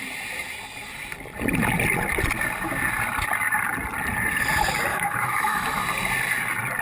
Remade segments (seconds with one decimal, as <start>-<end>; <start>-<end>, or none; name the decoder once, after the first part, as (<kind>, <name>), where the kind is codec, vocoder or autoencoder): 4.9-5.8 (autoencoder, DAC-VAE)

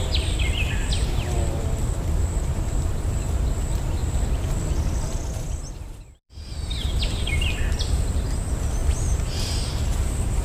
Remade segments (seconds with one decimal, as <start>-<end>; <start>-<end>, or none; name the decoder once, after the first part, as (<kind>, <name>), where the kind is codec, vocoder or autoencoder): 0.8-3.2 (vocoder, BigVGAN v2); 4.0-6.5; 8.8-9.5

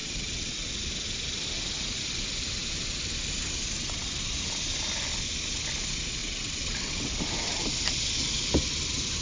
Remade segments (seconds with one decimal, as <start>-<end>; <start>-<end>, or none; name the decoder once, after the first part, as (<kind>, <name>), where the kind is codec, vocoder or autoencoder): 0.0-0.7 (vocoder, WaveNeXt); 6.2-7.1